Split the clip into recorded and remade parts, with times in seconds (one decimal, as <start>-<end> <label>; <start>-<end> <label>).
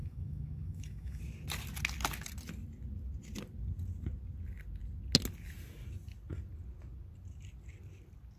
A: 0.0-1.2 remade; 1.2-8.4 recorded